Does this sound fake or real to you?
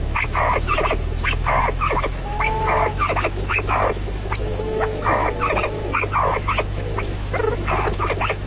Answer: fake